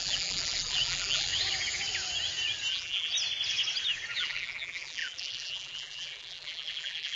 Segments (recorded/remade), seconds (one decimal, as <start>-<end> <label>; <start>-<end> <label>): 0.0-1.3 remade; 1.3-2.7 recorded; 2.7-3.1 remade; 3.1-4.2 recorded; 4.2-7.2 remade